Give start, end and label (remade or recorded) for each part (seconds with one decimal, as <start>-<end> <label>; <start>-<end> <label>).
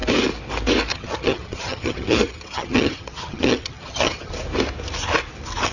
0.0-0.9 recorded; 0.9-4.3 remade; 4.3-5.7 recorded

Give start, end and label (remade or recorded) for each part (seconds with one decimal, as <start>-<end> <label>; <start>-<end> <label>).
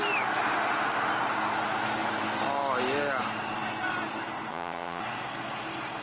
0.0-4.5 recorded; 4.5-5.0 remade; 5.0-6.0 recorded